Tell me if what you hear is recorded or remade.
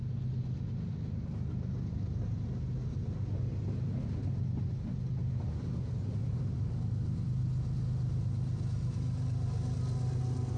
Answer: recorded